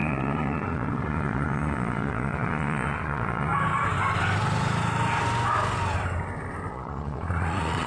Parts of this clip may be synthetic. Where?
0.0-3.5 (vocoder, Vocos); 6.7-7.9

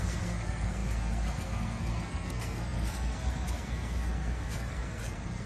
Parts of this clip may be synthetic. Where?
0.0-5.5 (codec, SNAC)

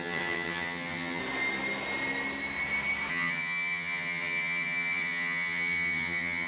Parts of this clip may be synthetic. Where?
0.0-1.2 (vocoder, HiFi-GAN); 3.1-6.5

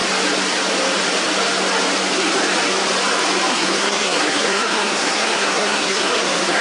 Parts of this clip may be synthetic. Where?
3.5-6.6 (codec, SNAC)